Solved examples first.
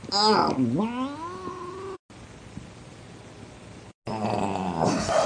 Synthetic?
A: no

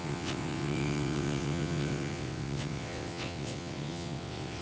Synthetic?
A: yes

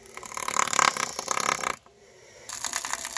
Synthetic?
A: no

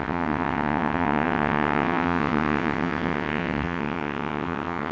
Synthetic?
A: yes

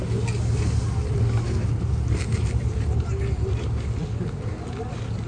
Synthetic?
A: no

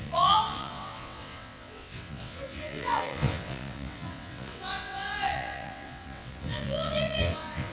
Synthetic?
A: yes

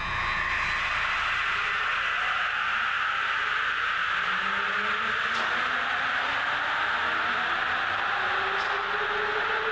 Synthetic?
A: no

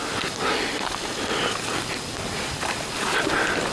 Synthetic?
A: no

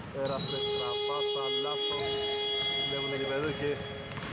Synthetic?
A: no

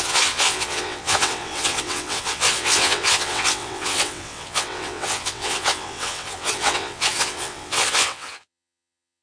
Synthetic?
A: yes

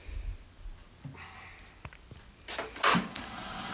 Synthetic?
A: no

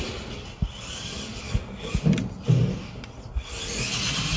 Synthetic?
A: no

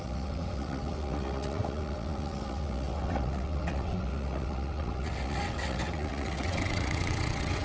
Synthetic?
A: yes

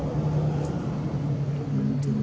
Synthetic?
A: no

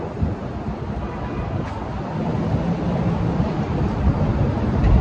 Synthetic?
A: no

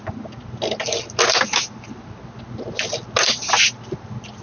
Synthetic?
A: no